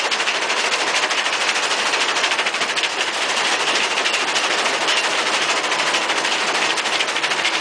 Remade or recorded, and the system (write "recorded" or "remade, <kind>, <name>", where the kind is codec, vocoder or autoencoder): recorded